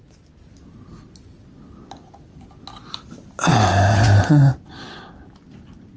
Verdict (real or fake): real